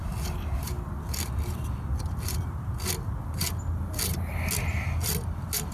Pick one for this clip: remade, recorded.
recorded